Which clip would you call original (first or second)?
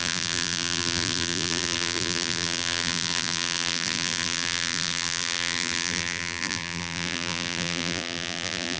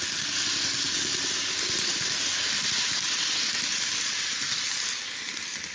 second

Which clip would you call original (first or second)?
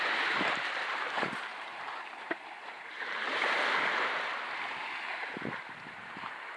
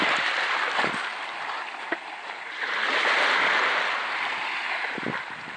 second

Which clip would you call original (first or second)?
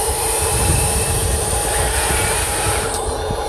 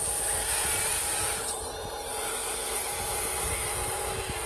second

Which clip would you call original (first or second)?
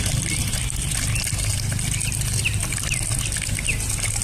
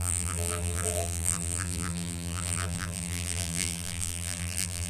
first